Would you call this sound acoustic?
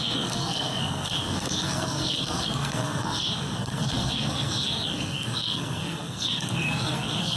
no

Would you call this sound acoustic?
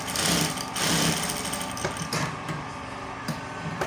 yes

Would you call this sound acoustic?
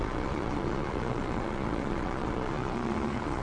no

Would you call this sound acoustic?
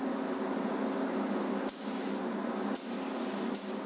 yes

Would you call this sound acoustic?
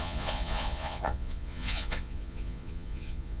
no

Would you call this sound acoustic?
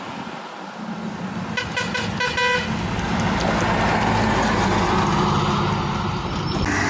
yes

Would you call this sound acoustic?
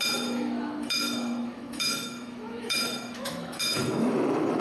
no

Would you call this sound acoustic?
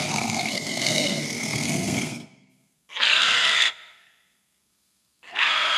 no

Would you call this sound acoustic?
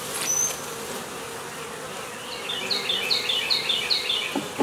yes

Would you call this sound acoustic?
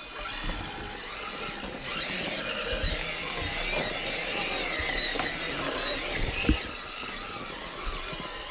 yes